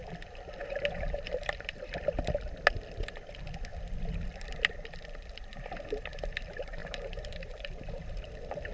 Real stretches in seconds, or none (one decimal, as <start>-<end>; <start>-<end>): 0.0-0.6; 2.1-6.8; 8.0-8.7

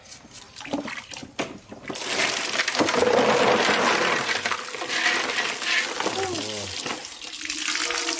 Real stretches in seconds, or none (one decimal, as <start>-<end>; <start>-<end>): 0.0-8.2

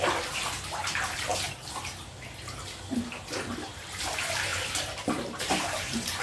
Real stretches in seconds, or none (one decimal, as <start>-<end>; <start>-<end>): 1.3-3.7; 4.5-5.4

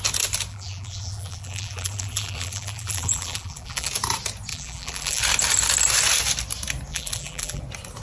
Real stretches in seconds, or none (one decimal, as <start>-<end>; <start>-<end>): 0.0-0.5; 3.9-4.5; 5.2-6.9; 7.6-8.0

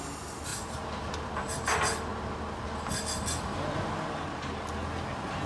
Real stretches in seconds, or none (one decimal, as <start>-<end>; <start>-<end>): 0.0-0.5; 1.4-5.5

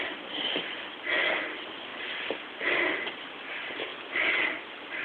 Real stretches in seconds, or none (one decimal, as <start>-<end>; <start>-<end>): 0.0-5.0

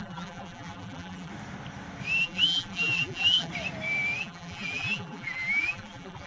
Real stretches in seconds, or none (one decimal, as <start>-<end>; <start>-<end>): 1.3-2.2; 3.5-4.2

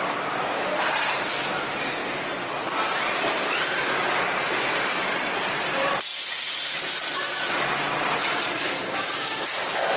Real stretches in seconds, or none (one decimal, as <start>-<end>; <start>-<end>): 0.0-6.1